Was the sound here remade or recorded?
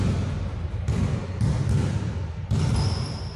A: recorded